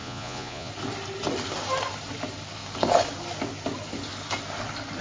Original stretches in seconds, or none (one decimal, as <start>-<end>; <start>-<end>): 0.7-5.0